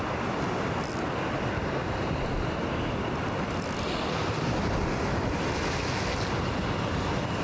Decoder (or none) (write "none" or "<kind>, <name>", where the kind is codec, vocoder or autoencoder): none